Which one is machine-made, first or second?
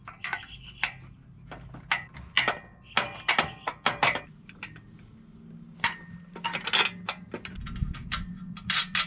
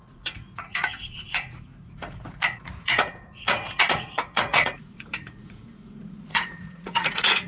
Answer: second